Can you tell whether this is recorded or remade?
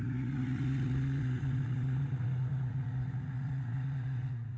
remade